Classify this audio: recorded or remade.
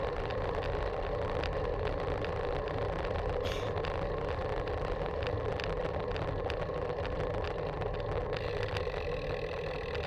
recorded